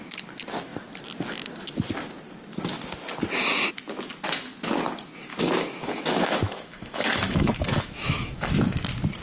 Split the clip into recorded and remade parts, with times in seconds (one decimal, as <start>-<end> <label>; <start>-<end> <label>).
0.0-5.3 recorded; 5.3-8.6 remade; 8.6-9.2 recorded